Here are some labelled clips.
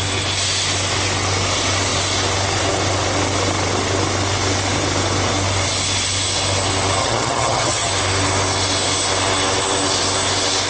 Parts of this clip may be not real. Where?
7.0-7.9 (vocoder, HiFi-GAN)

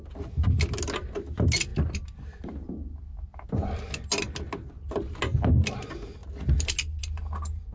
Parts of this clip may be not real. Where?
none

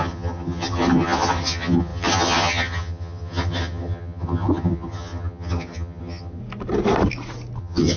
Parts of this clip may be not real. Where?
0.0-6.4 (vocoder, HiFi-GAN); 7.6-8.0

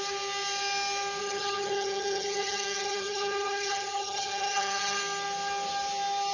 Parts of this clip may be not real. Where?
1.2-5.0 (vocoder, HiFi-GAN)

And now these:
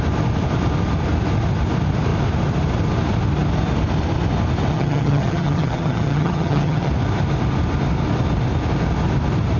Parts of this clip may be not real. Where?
4.7-6.9 (vocoder, HiFi-GAN)